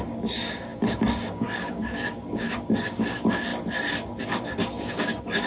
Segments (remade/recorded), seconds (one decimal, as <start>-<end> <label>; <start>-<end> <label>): 0.0-3.5 remade; 3.5-4.2 recorded; 4.2-5.5 remade